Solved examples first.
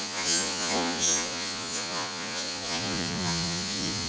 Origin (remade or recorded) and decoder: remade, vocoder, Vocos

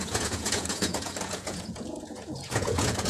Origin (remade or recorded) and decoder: remade, vocoder, Vocos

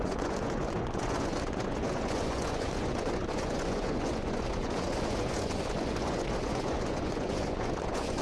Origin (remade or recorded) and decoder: remade, vocoder, Vocos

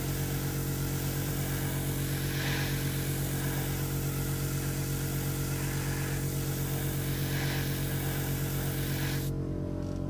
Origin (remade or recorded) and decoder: recorded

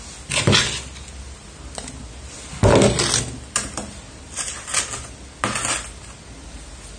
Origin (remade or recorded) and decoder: recorded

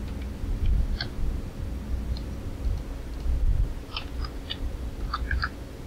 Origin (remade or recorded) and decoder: recorded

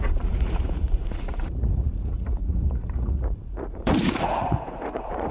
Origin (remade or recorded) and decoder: remade, vocoder, Vocos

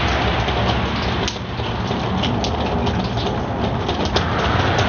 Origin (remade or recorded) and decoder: recorded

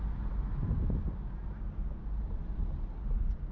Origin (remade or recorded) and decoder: recorded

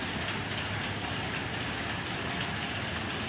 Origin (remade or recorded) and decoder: recorded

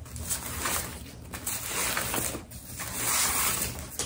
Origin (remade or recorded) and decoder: recorded